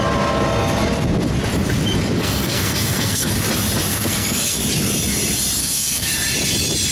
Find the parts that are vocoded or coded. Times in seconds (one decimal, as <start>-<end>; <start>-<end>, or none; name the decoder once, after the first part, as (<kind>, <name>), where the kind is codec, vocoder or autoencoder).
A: 2.2-3.3 (codec, SNAC); 3.9-4.6; 5.6-6.1